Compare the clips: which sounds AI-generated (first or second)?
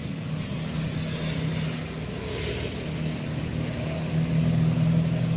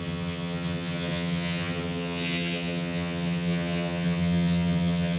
second